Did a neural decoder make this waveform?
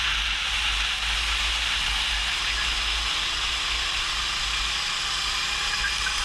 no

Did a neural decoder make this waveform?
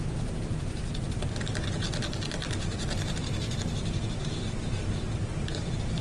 no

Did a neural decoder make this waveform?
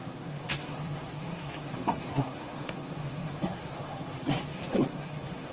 yes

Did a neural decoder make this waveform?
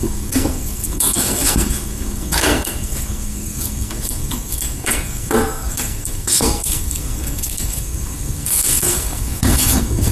yes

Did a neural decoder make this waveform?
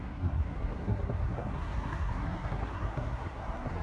yes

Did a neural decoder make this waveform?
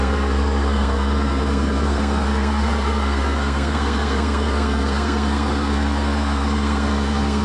yes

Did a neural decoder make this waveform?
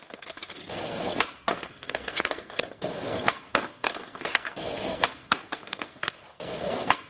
yes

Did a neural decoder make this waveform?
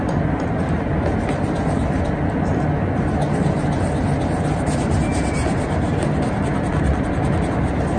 no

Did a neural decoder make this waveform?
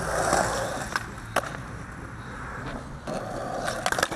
no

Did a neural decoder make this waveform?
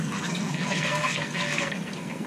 yes